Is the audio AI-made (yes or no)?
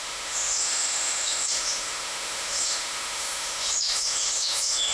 yes